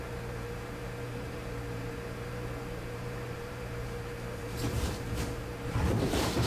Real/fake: fake